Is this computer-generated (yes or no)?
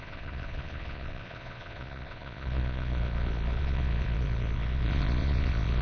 yes